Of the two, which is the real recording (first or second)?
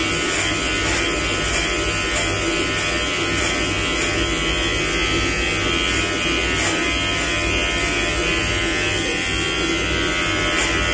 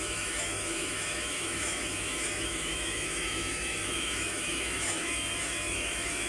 first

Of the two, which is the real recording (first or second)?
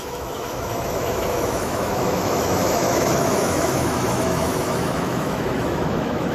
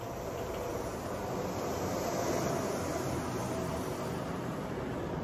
second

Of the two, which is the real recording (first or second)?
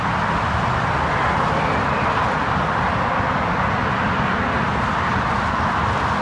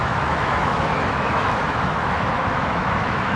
first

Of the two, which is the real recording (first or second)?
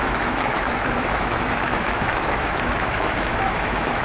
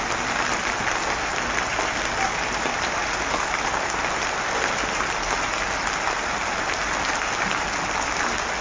second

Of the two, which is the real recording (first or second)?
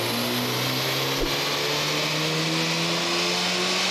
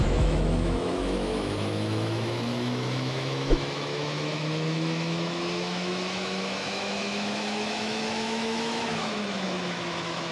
first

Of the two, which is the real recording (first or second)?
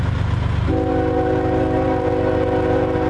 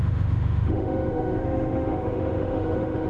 first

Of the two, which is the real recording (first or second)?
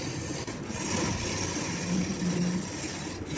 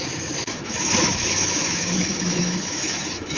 first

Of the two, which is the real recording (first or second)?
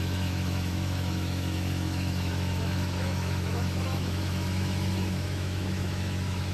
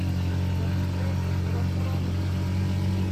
second